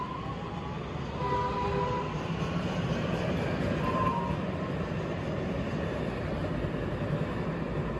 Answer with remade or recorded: recorded